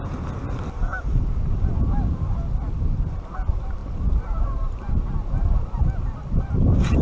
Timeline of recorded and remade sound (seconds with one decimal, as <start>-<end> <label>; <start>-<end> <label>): 0.0-7.0 remade